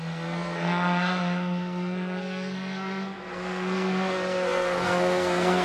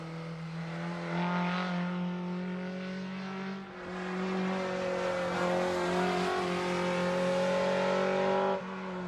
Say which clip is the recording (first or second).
second